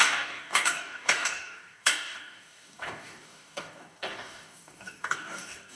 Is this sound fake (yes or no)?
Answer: yes